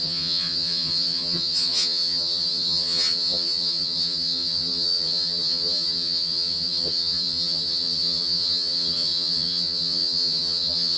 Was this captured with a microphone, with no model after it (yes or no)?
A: no